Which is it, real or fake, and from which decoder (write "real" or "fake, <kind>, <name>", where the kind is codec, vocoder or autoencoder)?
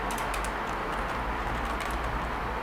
real